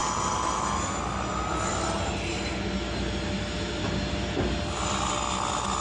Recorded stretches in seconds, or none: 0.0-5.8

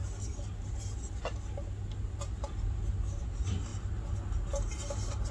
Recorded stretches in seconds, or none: 0.0-5.3

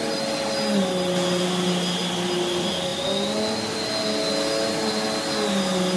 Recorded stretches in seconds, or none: 0.0-6.0

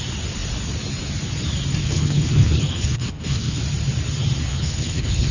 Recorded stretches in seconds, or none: 0.0-1.8; 3.6-4.5

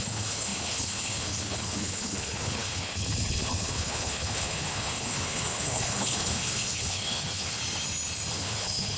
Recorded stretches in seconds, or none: 7.6-8.3

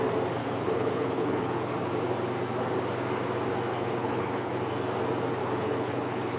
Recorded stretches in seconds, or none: 0.0-0.4; 1.7-3.7; 4.5-5.4

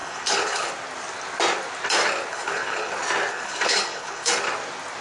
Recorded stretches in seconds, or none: 0.7-2.3; 2.9-3.3; 4.3-5.0